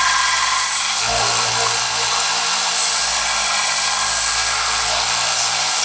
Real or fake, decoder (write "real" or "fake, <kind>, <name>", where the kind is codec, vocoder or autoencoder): real